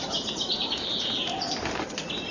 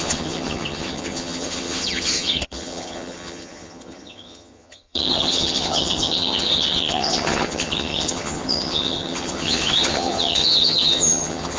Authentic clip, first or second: first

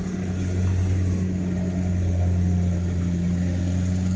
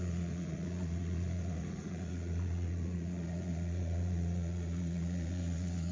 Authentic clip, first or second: first